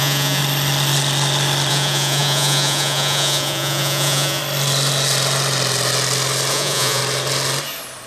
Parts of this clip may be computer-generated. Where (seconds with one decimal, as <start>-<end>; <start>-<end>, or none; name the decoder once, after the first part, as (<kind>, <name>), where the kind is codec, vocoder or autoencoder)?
0.0-0.4 (vocoder, Vocos); 1.7-4.4; 6.5-7.0